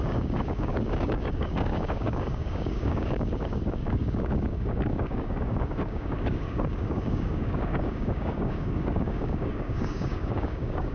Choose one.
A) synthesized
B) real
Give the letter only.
A